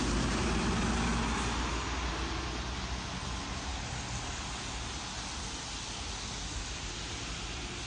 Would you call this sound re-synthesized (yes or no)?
no